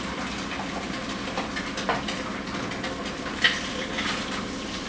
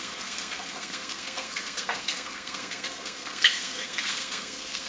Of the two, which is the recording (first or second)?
first